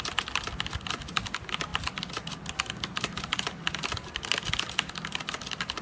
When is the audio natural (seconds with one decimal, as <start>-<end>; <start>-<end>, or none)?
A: 0.0-5.8